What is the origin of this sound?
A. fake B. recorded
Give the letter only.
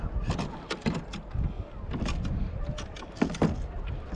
B